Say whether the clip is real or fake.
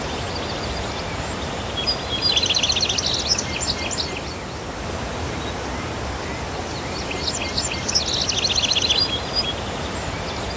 real